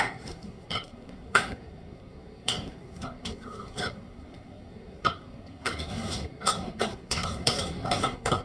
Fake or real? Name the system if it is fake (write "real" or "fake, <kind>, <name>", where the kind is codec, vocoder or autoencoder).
fake, codec, SNAC